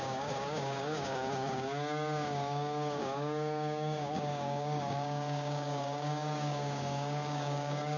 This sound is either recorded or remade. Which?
remade